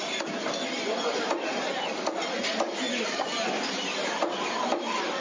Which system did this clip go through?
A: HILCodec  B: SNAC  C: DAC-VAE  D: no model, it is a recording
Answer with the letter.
D